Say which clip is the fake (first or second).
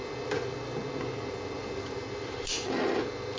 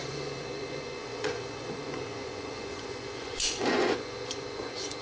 second